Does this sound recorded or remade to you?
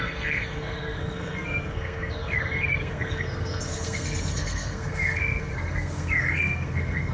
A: remade